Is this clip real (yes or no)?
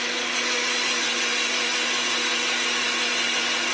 yes